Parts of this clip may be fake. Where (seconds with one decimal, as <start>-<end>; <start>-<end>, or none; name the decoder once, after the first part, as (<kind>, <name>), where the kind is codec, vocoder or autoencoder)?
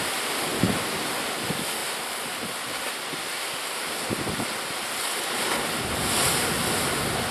none